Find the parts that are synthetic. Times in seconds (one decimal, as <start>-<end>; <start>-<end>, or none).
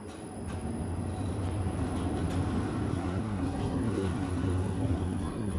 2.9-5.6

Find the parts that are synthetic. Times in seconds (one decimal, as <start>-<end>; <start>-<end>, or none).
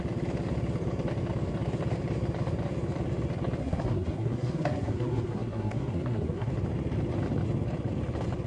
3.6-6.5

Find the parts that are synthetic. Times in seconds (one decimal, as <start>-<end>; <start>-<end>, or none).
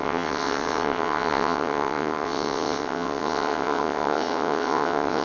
0.0-5.2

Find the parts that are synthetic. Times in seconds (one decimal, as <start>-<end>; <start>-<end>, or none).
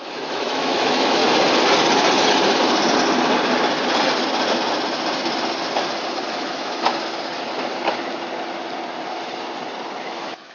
0.0-1.2; 6.3-6.9; 10.0-10.5